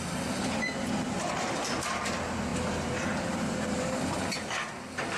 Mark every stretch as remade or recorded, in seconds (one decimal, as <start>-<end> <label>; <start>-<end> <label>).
0.0-5.2 recorded